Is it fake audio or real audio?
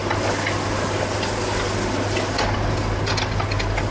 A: real